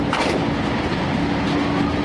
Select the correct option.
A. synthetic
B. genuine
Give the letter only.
B